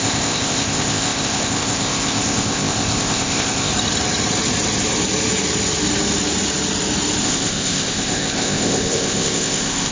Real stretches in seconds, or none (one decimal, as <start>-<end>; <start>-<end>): 3.7-7.2